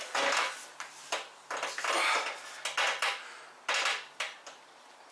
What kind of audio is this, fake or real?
real